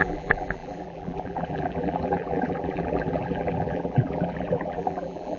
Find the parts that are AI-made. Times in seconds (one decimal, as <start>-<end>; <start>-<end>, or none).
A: 0.0-5.4